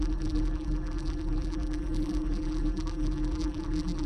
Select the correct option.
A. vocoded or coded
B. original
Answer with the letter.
A